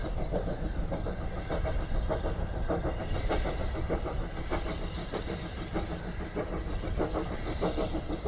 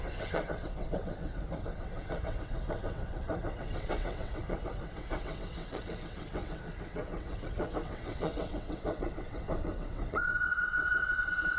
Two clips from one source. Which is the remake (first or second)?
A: second